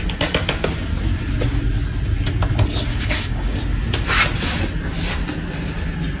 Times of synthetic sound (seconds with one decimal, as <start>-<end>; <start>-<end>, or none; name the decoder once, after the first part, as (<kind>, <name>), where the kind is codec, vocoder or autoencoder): 2.9-3.6 (codec, DAC)